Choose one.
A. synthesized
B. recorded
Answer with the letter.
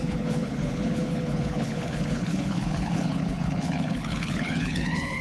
A